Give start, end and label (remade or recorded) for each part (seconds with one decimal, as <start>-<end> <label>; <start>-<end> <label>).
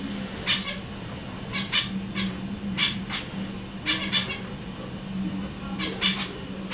0.0-6.7 recorded